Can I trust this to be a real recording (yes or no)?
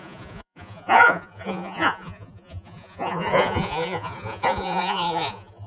no